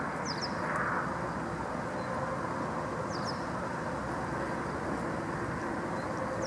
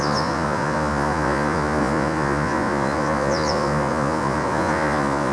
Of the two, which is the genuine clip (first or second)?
first